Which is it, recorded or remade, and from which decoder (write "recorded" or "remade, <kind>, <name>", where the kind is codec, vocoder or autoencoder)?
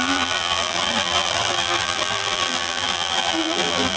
remade, vocoder, BigVGAN v2